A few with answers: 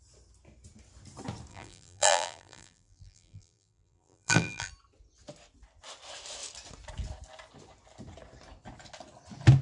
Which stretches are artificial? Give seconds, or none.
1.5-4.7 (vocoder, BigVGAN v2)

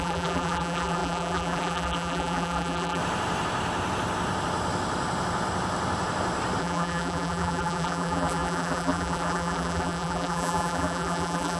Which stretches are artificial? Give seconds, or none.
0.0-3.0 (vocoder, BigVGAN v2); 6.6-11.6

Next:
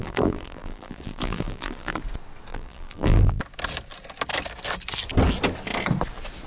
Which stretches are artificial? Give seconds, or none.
0.0-2.0 (vocoder, BigVGAN v2); 2.5-3.4

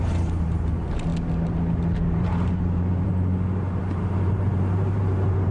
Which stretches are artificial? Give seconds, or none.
0.0-1.1 (vocoder, BigVGAN v2); 2.0-3.1; 3.8-5.5

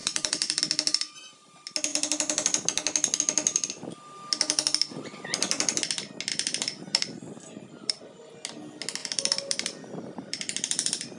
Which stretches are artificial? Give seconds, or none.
0.0-0.6 (vocoder, BigVGAN v2); 6.3-7.9; 9.0-11.2